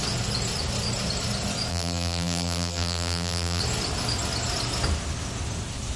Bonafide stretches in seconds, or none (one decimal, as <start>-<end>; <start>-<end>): 0.0-1.7; 3.6-6.0